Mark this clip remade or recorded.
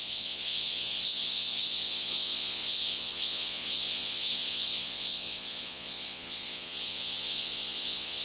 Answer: remade